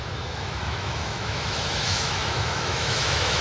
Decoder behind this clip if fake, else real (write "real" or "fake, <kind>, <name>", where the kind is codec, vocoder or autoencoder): fake, autoencoder, DAC-VAE